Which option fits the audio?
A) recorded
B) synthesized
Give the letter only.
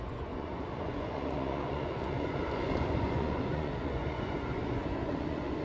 B